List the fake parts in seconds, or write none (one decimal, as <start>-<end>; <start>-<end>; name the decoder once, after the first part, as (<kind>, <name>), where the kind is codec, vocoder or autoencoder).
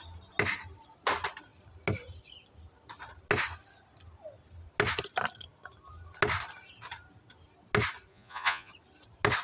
8.1-8.7 (vocoder, Vocos)